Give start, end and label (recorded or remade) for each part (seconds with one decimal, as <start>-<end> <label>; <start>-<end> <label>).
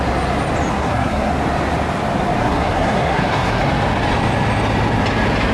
0.0-0.7 recorded; 0.7-1.3 remade; 1.3-2.4 recorded; 2.4-3.6 remade; 3.6-5.5 recorded